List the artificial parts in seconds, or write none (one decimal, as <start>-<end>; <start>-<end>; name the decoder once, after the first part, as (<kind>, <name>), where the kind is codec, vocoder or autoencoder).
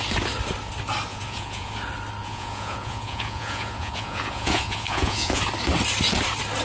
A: 1.1-1.7 (vocoder, Vocos); 2.2-5.4